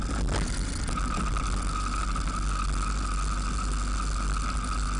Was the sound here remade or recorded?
recorded